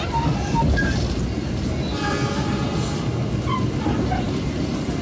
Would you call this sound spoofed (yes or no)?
no